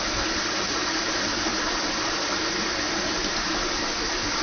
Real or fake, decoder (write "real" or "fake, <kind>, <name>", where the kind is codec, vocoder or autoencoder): real